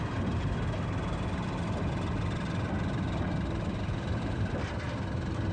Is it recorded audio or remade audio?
recorded